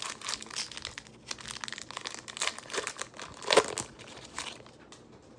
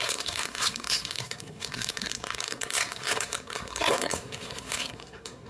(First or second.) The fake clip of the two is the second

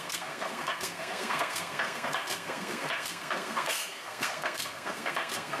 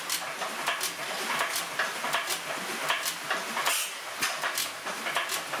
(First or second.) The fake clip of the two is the first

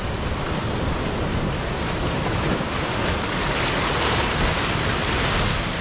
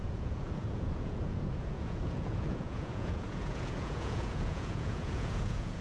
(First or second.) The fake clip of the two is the second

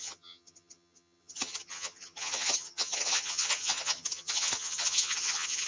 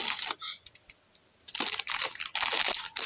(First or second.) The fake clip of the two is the first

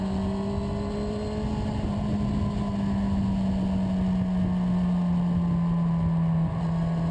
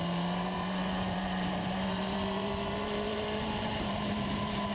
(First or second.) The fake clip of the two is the second